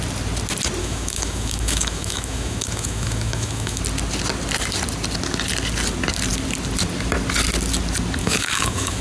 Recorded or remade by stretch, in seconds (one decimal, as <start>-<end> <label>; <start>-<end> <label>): 0.0-0.8 recorded; 0.8-3.8 remade; 3.8-8.2 recorded; 8.2-9.0 remade